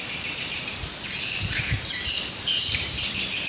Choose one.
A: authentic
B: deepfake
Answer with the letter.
A